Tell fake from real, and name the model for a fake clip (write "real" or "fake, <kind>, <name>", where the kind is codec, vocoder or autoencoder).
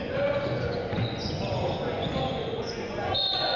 fake, vocoder, Vocos